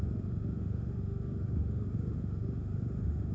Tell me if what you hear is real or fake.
fake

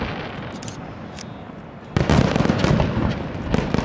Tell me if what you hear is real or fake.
real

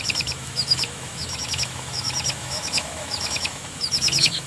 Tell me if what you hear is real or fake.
fake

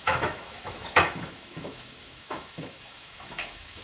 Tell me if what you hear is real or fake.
fake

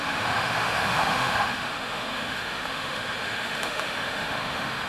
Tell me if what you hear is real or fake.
fake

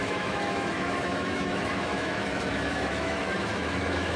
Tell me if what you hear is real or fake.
fake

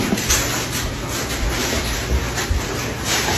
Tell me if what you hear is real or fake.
real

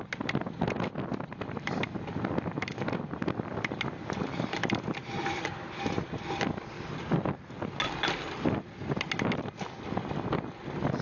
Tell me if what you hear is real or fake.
real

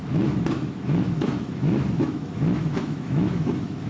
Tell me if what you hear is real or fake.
fake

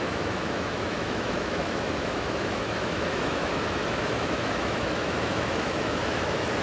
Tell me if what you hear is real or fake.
fake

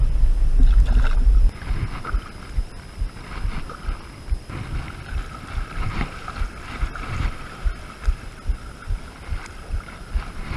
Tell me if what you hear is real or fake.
real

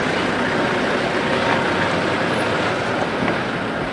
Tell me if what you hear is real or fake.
real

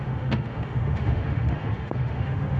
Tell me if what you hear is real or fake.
fake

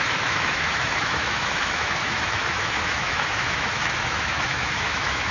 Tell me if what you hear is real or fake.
fake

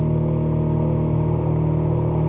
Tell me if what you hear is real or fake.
real